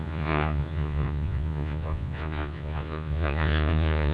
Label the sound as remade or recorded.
remade